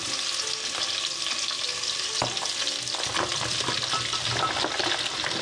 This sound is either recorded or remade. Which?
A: recorded